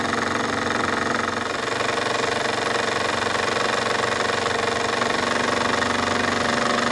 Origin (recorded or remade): recorded